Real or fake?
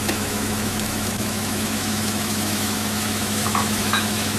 fake